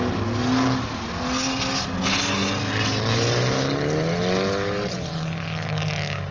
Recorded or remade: recorded